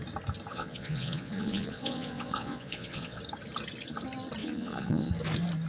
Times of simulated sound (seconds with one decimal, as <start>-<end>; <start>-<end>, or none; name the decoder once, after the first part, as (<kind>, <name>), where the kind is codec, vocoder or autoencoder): 0.5-3.2 (vocoder, Vocos); 4.4-5.1